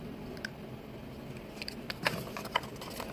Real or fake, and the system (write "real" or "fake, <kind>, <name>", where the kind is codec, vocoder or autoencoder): real